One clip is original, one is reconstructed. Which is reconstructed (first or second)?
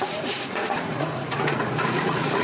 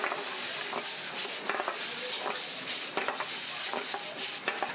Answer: first